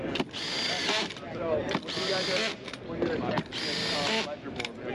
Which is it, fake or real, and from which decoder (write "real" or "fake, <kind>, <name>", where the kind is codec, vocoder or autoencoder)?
real